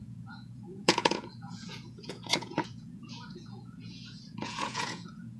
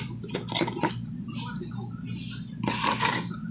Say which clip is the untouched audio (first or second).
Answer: second